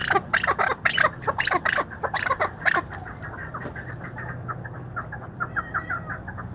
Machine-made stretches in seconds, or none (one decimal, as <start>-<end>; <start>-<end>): 0.0-3.9; 4.8-5.6